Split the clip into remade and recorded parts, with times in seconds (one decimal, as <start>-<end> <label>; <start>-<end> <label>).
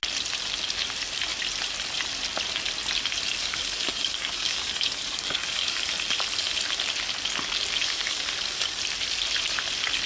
0.0-3.4 recorded; 3.4-5.9 remade; 5.9-7.8 recorded; 7.8-8.8 remade; 8.8-10.1 recorded